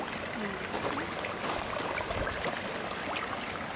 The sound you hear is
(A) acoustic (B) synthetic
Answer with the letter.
A